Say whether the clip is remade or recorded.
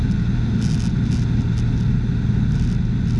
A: recorded